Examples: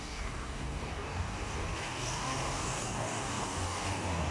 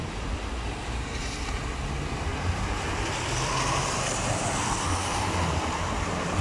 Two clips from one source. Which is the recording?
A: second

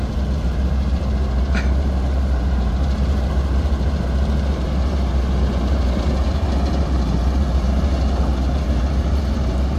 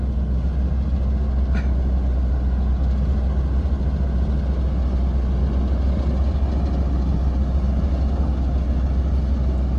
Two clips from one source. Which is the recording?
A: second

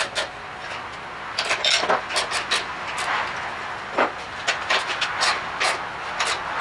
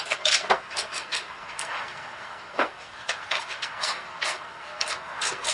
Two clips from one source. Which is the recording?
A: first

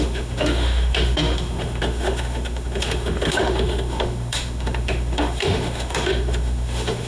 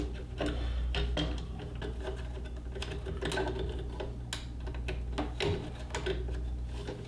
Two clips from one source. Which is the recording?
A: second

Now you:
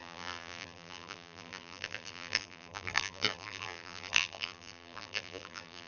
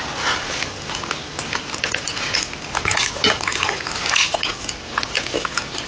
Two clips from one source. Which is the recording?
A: second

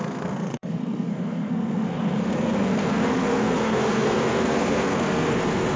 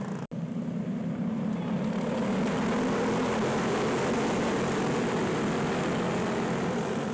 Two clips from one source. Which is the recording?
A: second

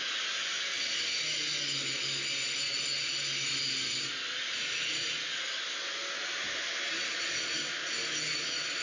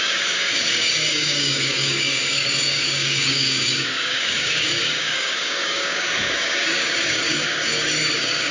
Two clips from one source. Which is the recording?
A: first